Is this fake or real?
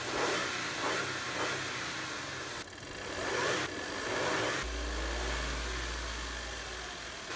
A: real